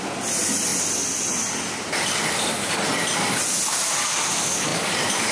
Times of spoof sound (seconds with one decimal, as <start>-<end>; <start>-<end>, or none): none